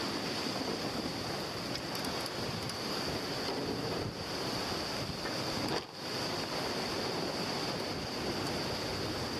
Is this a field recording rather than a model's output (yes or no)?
yes